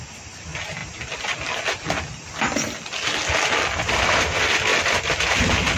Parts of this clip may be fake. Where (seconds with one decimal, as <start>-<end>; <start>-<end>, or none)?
none